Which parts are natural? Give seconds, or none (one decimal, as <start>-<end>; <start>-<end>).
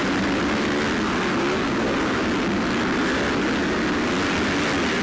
0.0-5.0